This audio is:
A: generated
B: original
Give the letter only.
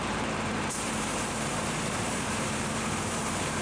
A